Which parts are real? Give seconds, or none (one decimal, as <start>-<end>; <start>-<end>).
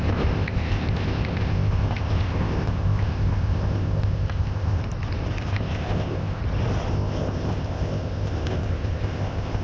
4.8-5.4; 6.4-6.9